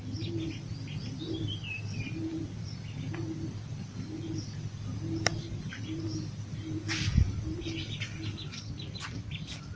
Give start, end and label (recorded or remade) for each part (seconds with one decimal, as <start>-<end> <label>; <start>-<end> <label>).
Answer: 0.0-9.8 recorded